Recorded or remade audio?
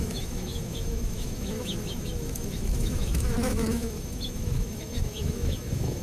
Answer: remade